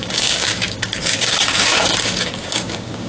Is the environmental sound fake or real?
fake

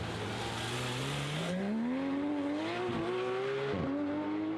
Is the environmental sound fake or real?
real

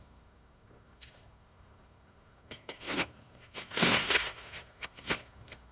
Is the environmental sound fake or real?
fake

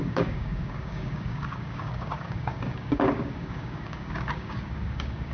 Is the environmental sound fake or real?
fake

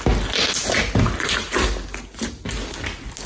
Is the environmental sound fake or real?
real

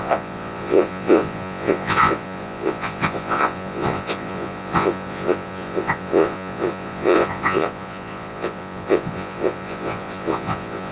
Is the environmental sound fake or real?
fake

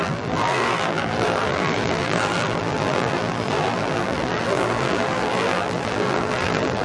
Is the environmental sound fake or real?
fake